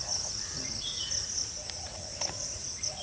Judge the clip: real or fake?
fake